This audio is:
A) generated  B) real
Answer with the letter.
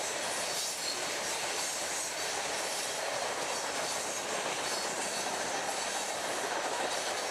B